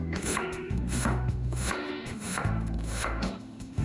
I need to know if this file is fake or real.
fake